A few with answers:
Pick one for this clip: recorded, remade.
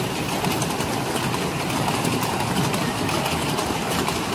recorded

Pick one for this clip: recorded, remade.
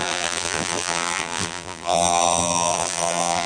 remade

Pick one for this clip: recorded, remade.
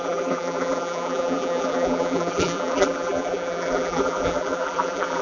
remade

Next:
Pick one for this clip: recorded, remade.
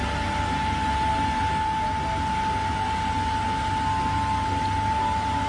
recorded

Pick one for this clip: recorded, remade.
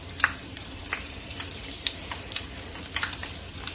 remade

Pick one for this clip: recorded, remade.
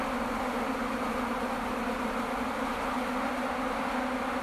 recorded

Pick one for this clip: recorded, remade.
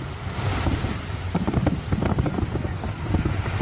remade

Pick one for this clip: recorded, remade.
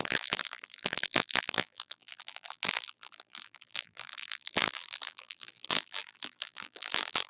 remade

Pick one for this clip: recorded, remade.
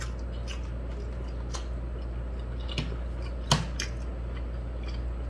recorded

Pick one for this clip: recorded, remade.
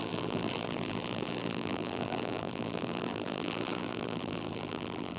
remade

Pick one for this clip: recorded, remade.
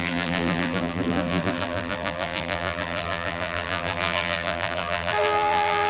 remade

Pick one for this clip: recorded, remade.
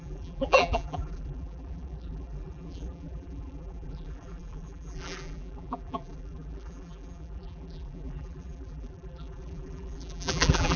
remade